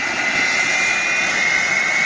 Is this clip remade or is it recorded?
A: recorded